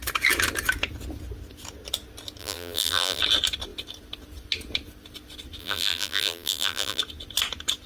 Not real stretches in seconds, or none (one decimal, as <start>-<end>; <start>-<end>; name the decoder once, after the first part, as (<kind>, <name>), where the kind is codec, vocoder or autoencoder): 2.4-3.2 (vocoder, BigVGAN v2); 5.6-7.0